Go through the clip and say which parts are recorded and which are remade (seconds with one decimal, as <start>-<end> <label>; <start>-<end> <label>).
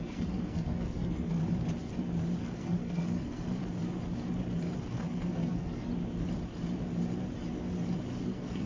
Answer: 0.0-1.4 remade; 1.4-2.4 recorded; 2.4-3.6 remade; 3.6-4.9 recorded; 4.9-5.9 remade; 5.9-8.2 recorded; 8.2-8.7 remade